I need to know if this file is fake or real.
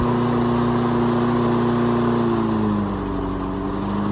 real